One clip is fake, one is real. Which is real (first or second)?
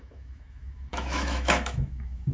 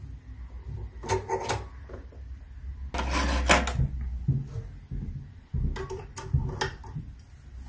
second